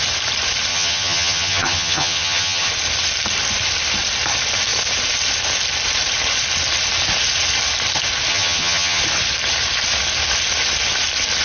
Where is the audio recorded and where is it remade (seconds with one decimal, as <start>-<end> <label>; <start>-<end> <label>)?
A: 0.0-0.7 recorded; 0.7-2.7 remade; 2.7-8.3 recorded; 8.3-9.0 remade; 9.0-11.4 recorded